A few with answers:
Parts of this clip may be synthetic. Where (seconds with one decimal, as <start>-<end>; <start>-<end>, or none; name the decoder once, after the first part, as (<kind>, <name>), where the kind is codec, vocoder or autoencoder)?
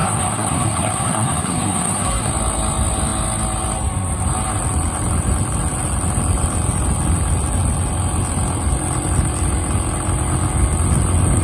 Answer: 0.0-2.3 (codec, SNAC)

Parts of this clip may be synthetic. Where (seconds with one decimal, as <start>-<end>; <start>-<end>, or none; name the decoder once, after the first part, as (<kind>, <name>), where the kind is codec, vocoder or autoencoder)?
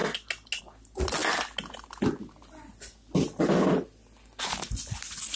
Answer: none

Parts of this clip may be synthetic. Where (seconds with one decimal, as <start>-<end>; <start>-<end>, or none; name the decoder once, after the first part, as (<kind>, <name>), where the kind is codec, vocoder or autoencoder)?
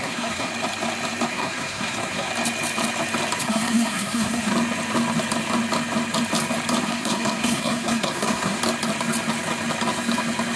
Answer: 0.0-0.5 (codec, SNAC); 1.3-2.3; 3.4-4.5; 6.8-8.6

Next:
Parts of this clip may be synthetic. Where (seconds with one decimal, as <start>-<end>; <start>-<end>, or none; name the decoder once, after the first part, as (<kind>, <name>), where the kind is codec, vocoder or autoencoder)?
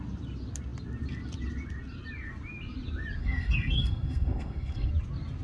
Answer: 3.2-4.9 (codec, SNAC)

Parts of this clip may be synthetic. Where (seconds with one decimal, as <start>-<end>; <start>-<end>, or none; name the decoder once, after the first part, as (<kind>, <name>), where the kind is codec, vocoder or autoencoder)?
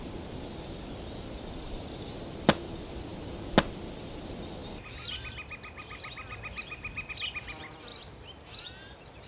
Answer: none